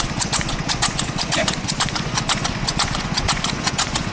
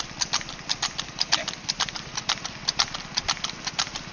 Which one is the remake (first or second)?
first